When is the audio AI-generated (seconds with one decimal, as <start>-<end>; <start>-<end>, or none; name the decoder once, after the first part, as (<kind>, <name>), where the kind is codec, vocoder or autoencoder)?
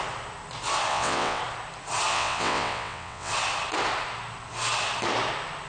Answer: 0.9-1.4 (vocoder, WaveNeXt); 2.1-3.3